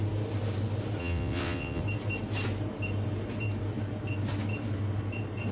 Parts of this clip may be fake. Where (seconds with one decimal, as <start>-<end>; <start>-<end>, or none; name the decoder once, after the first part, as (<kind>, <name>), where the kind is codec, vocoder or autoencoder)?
1.0-1.8 (vocoder, WaveNeXt)